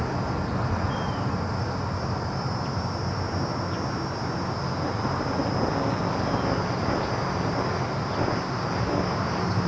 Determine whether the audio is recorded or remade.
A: recorded